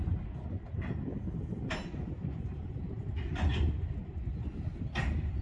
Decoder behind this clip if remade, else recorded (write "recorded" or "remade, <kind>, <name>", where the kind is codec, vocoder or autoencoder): recorded